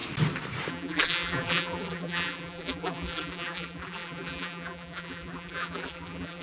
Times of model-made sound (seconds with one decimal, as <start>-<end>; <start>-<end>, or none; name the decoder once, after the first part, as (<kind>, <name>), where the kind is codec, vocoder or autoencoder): 0.7-6.4 (vocoder, BigVGAN v2)